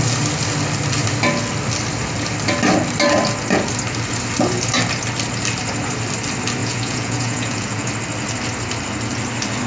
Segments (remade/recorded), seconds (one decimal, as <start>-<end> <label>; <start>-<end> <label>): 0.0-6.6 recorded; 6.6-7.9 remade; 7.9-9.7 recorded